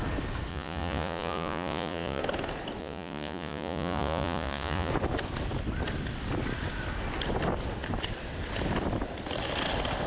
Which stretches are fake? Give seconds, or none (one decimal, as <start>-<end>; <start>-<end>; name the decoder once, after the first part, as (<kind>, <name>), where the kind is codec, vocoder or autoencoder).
0.5-2.2 (vocoder, Vocos); 2.8-4.9